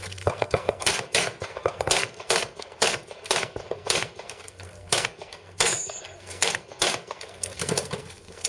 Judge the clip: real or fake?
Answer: fake